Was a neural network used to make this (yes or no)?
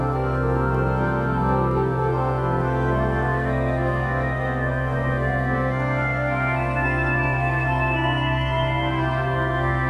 yes